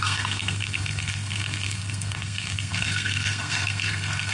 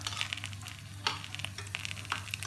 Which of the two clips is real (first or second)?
second